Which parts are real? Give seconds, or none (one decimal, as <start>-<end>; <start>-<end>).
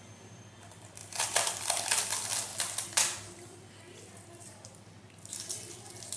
0.0-6.2